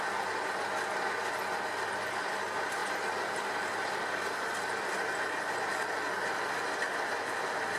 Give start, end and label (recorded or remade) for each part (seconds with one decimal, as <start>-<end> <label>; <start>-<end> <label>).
0.0-7.8 recorded